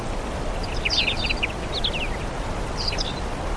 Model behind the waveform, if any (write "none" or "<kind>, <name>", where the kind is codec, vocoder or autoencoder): none